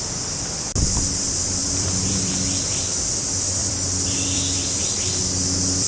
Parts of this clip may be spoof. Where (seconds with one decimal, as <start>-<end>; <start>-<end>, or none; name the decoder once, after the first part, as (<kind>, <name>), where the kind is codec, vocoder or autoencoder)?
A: 1.6-2.3 (vocoder, BigVGAN v2); 3.6-4.8